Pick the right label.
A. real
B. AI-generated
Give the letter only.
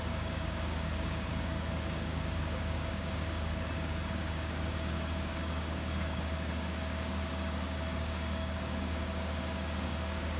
B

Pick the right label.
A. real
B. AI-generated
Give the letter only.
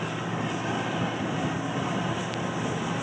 A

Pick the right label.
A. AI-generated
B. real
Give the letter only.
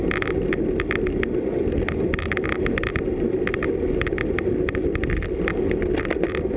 B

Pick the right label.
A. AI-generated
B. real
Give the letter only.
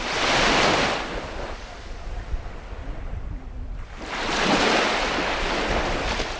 B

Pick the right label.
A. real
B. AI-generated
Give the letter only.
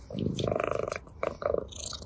B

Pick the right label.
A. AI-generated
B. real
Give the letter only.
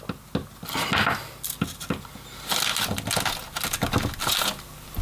B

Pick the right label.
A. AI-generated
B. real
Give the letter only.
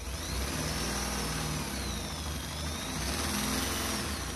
B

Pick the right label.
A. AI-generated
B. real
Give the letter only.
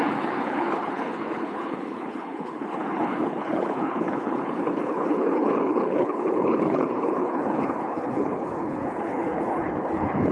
A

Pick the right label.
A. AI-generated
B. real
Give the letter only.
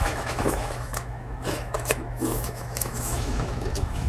A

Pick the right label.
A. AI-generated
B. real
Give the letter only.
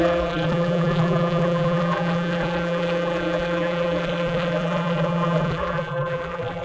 A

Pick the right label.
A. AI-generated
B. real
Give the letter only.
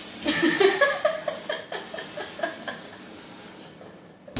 B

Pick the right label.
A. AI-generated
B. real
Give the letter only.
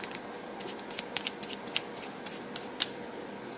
B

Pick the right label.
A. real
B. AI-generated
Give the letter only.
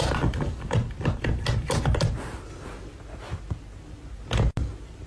A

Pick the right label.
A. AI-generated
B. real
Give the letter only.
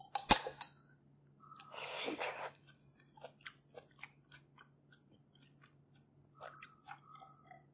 B